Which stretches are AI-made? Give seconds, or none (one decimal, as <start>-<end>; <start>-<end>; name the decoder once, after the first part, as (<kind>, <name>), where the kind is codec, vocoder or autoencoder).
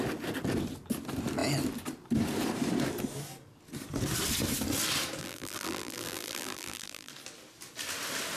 5.2-7.1 (vocoder, BigVGAN v2)